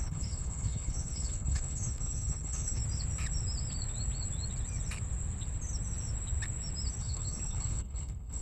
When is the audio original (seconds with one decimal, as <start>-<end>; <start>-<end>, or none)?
2.8-7.0